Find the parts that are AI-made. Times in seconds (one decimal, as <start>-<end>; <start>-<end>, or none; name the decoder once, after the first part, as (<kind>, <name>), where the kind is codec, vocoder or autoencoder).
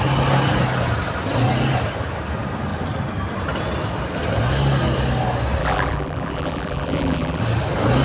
5.6-7.4 (vocoder, BigVGAN v2)